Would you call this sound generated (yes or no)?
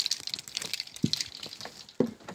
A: no